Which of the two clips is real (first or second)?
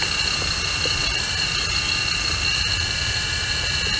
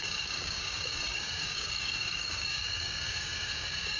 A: first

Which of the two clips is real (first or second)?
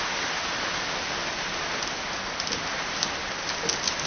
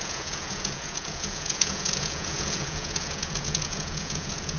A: first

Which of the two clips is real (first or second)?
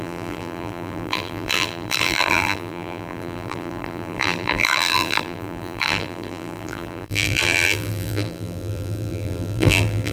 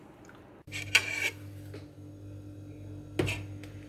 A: second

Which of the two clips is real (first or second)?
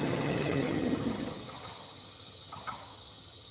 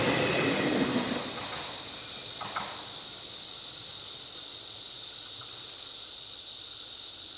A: second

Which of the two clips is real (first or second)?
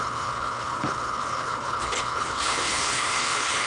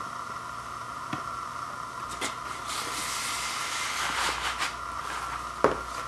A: second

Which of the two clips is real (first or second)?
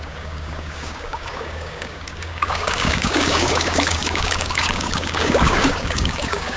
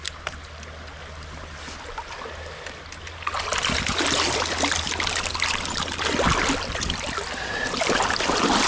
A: second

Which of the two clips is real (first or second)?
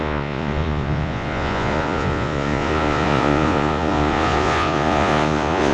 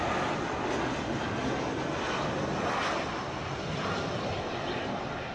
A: second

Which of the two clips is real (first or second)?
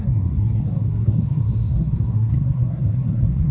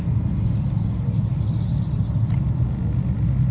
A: second